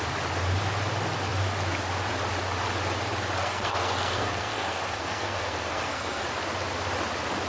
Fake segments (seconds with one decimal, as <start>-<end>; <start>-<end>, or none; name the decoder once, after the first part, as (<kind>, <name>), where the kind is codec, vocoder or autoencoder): 3.4-6.2 (codec, SNAC)